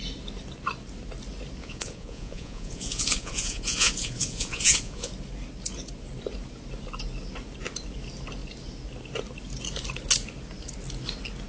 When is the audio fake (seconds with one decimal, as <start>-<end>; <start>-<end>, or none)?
1.6-5.1

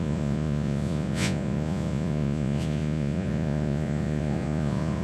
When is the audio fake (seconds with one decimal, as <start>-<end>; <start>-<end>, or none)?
0.0-5.0

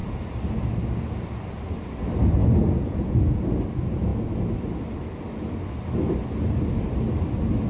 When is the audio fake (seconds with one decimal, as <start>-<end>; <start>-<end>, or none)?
2.4-3.4

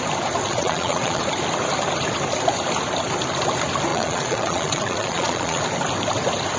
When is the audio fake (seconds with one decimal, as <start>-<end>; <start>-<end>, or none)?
0.4-1.2; 3.9-5.6

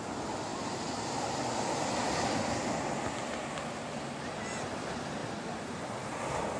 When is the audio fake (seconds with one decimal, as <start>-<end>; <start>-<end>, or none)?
none